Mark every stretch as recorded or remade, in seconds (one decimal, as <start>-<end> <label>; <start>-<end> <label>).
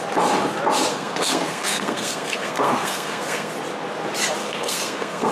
0.0-0.9 recorded; 0.9-3.5 remade; 3.5-4.4 recorded; 4.4-5.3 remade